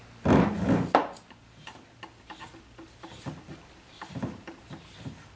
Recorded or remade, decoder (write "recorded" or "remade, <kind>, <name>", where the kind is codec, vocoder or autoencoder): recorded